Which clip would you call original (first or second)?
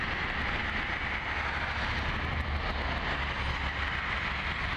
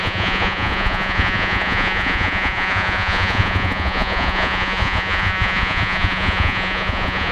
first